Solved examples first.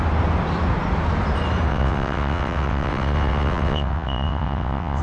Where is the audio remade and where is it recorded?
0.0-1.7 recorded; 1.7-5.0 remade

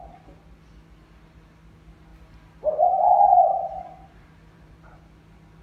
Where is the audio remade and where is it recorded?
0.0-2.1 recorded; 2.1-5.0 remade; 5.0-5.6 recorded

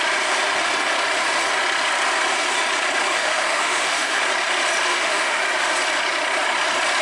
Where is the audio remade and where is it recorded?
0.0-3.1 recorded; 3.1-4.2 remade; 4.2-4.9 recorded; 4.9-5.4 remade; 5.4-7.0 recorded

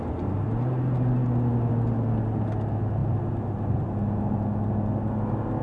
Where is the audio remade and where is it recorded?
0.0-5.6 recorded

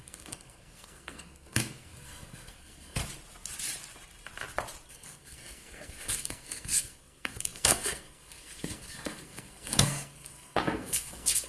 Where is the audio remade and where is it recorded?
0.0-3.0 remade; 3.0-4.9 recorded; 4.9-11.5 remade

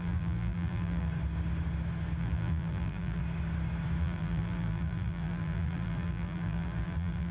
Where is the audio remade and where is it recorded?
0.0-1.1 remade; 1.1-2.2 recorded; 2.2-3.2 remade; 3.2-4.0 recorded; 4.0-7.3 remade

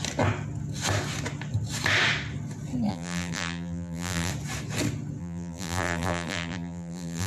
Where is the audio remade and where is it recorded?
0.0-2.9 recorded; 2.9-4.3 remade; 4.3-5.2 recorded; 5.2-7.3 remade